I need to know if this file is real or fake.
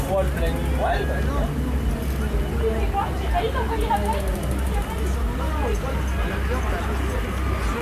real